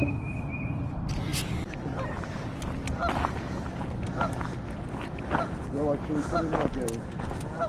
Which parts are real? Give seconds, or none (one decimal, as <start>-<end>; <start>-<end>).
2.8-7.7